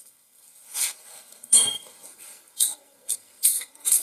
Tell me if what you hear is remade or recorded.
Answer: remade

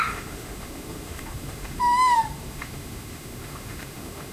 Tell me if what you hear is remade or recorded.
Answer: remade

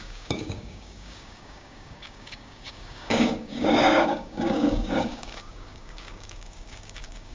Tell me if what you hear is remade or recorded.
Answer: remade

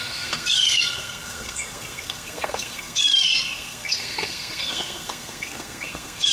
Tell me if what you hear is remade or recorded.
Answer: remade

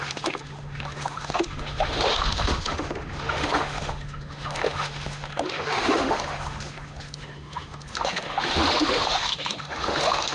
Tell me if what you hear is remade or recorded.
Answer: remade